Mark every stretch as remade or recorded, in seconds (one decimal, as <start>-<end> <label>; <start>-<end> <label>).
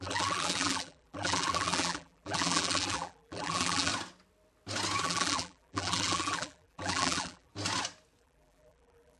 0.0-3.9 remade; 3.9-5.0 recorded; 5.0-7.5 remade; 7.5-8.2 recorded; 8.2-9.2 remade